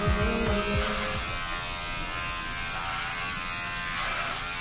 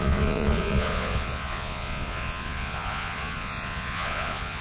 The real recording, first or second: first